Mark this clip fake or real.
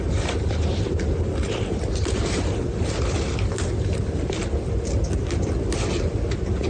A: real